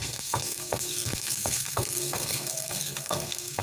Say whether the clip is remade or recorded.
remade